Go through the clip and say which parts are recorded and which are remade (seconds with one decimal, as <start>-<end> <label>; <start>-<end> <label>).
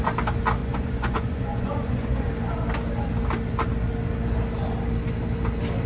0.0-0.6 recorded; 0.6-2.3 remade; 2.3-5.9 recorded